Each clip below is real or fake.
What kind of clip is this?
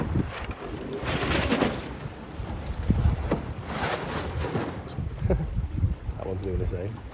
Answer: real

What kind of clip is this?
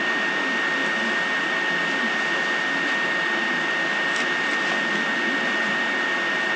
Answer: real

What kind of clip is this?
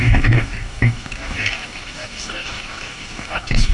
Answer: fake